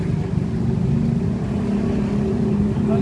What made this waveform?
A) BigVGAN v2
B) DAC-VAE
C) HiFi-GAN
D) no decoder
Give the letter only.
D